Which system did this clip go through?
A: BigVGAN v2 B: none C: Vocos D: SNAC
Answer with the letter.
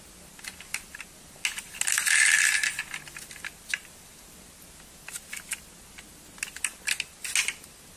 B